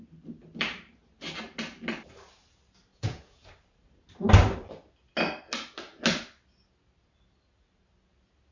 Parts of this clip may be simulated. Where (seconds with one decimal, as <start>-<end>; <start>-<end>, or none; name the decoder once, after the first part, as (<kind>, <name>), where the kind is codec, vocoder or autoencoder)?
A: 2.9-3.5 (vocoder, Vocos)